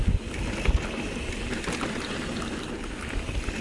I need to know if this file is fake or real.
real